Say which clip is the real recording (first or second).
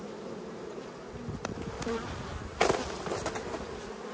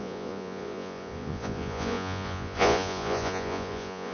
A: first